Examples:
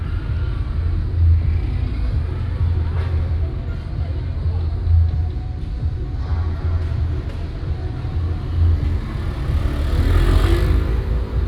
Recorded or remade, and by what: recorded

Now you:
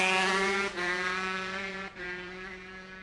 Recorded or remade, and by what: remade, vocoder, Vocos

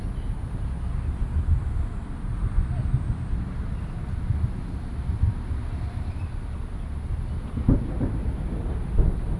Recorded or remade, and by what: recorded